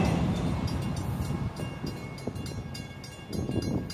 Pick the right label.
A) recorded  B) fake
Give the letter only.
A